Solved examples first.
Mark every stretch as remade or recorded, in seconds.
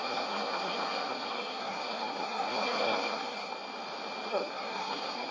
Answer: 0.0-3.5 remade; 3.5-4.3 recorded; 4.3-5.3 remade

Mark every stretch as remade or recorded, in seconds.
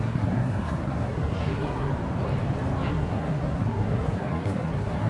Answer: 0.0-1.9 remade; 1.9-2.9 recorded; 2.9-5.1 remade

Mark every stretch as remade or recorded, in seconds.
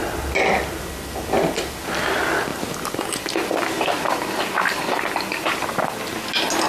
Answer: 0.0-6.7 recorded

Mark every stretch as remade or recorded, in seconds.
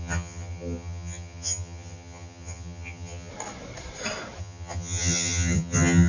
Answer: 0.0-3.3 remade; 3.3-4.4 recorded; 4.4-6.1 remade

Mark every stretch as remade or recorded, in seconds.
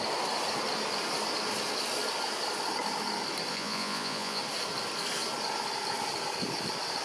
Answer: 0.0-3.5 recorded; 3.5-4.4 remade; 4.4-7.0 recorded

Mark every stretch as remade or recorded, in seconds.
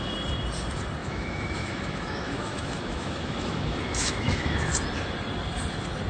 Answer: 0.0-1.0 recorded; 1.0-4.7 remade; 4.7-6.1 recorded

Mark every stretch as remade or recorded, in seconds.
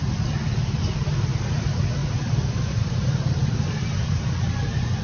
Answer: 0.0-5.0 recorded